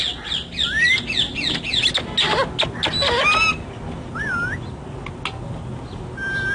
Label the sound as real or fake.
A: real